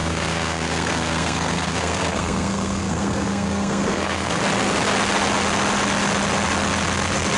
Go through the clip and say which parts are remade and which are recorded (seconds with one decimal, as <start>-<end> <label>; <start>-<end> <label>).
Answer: 0.0-4.4 remade; 4.4-7.4 recorded